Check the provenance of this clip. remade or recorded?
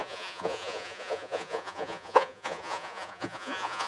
remade